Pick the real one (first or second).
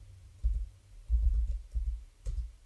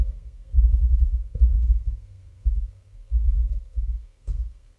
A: first